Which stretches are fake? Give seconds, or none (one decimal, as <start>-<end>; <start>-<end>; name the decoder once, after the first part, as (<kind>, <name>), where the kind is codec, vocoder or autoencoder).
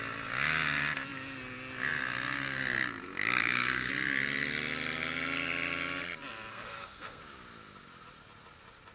3.4-3.9 (codec, SNAC); 6.5-7.2